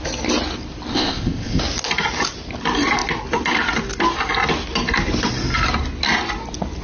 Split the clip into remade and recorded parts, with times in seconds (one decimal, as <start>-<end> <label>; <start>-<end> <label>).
0.0-0.9 recorded; 0.9-1.6 remade; 1.6-6.8 recorded

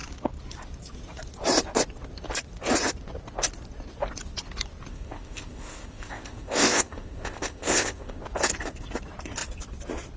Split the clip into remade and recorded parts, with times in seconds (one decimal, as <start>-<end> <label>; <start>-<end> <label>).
0.0-4.9 recorded; 4.9-8.2 remade; 8.2-10.2 recorded

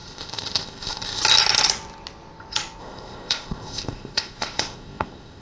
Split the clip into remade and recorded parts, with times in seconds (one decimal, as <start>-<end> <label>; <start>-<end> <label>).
0.0-1.2 remade; 1.2-2.8 recorded; 2.8-5.4 remade

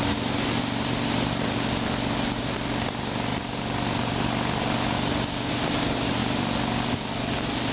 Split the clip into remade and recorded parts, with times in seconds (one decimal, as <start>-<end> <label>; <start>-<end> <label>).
0.0-7.7 recorded

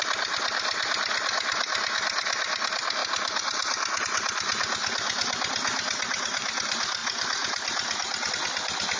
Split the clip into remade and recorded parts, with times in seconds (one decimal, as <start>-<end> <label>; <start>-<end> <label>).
0.0-9.0 recorded